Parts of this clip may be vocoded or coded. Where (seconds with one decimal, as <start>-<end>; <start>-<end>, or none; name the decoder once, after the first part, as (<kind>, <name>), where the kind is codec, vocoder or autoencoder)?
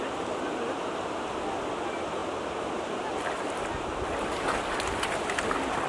none